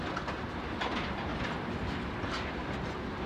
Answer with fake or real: real